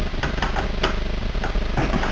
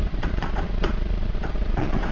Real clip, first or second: first